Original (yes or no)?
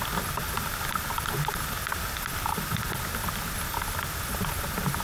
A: no